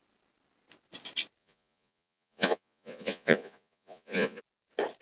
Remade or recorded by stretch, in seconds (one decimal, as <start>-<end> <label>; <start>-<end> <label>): 0.0-1.4 recorded; 1.4-4.4 remade; 4.4-5.0 recorded

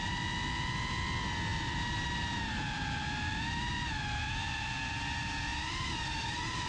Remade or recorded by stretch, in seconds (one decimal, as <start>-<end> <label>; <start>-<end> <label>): 0.0-1.5 recorded; 1.5-3.9 remade; 3.9-5.5 recorded; 5.5-6.7 remade

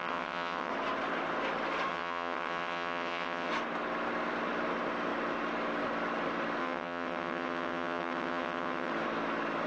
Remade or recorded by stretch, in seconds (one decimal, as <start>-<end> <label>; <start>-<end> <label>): 0.0-0.7 remade; 0.7-1.9 recorded; 1.9-3.5 remade; 3.5-6.6 recorded; 6.6-8.9 remade; 8.9-9.7 recorded

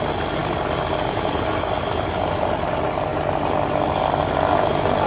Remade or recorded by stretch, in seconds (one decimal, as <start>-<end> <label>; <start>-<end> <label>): 0.0-0.4 recorded; 0.4-2.3 remade; 2.3-5.1 recorded

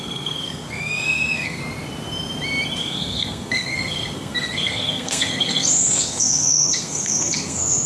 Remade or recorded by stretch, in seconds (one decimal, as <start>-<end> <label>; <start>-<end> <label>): 0.0-1.6 remade; 1.6-2.8 recorded; 2.8-7.9 remade

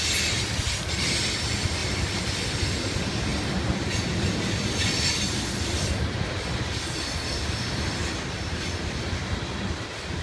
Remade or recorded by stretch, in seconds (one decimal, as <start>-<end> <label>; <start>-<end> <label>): 0.0-1.8 recorded; 1.8-2.5 remade; 2.5-3.3 recorded; 3.3-7.9 remade; 7.9-10.2 recorded

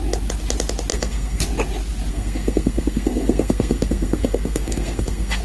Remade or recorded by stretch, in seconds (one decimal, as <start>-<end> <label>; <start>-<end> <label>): 0.0-0.9 recorded; 0.9-1.4 remade; 1.4-2.1 recorded; 2.1-5.4 remade